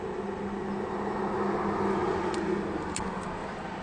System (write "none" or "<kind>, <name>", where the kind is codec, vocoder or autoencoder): none